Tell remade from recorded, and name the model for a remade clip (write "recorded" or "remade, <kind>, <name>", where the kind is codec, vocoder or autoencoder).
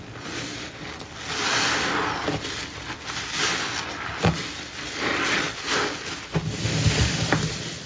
recorded